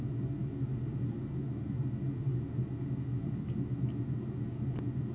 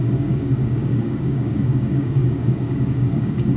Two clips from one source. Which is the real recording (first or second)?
first